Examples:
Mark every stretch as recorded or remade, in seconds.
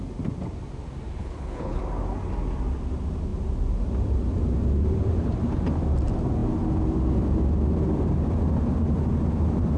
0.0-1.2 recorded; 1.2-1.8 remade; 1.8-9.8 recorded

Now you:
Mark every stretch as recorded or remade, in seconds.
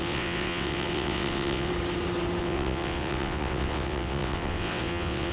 0.0-1.7 remade; 1.7-2.4 recorded; 2.4-5.3 remade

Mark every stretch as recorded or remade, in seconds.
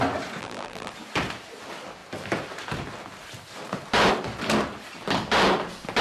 0.0-0.4 recorded; 0.4-0.9 remade; 0.9-6.0 recorded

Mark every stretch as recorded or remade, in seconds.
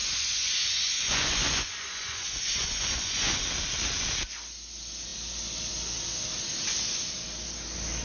0.0-3.4 remade; 3.4-8.0 recorded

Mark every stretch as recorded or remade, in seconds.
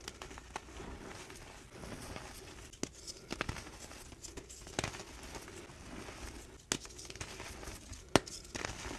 0.0-9.0 recorded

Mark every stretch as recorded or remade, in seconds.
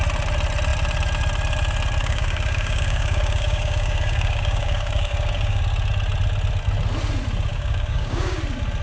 0.0-2.0 recorded; 2.0-5.6 remade; 5.6-7.5 recorded; 7.5-8.4 remade; 8.4-8.8 recorded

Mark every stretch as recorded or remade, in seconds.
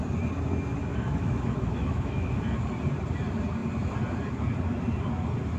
0.0-0.9 recorded; 0.9-2.4 remade; 2.4-5.6 recorded